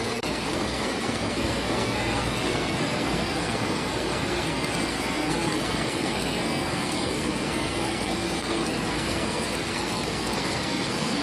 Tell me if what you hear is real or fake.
fake